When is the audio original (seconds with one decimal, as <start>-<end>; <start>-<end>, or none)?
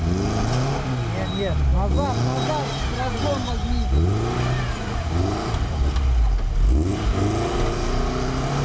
0.0-8.6